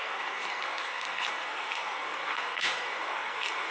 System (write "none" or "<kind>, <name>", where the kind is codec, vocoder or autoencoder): codec, SNAC